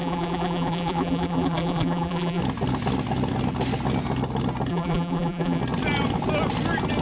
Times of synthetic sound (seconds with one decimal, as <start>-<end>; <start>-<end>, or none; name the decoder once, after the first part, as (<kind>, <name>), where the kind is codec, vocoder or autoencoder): 0.0-2.4 (vocoder, BigVGAN v2); 4.7-5.6